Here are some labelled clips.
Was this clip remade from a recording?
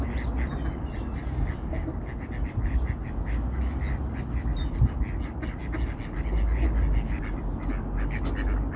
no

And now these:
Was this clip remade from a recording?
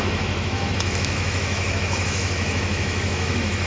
yes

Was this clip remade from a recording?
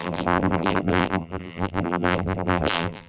yes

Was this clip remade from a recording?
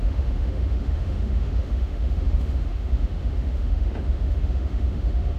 yes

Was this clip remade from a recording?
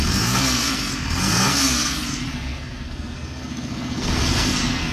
yes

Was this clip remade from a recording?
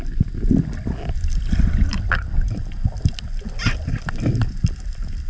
no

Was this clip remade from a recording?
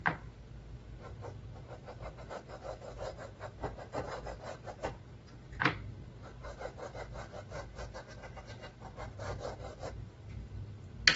no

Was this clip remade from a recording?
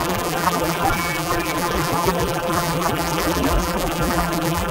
yes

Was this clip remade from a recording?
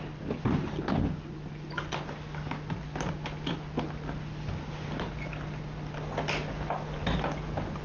no